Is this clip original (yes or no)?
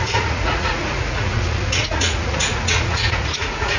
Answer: no